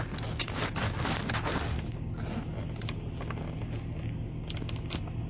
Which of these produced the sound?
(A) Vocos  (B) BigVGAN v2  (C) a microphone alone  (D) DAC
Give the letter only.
C